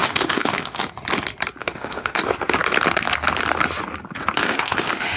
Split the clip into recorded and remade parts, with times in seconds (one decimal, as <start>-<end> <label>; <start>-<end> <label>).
0.0-0.8 remade; 0.8-1.6 recorded; 1.6-2.2 remade; 2.2-4.4 recorded; 4.4-5.2 remade